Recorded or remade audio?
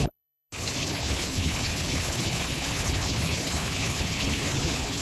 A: remade